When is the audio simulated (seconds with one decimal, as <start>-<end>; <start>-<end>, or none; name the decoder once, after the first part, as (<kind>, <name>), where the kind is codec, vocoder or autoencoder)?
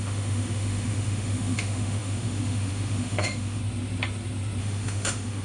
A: 0.0-3.6 (autoencoder, DAC-VAE); 4.6-5.4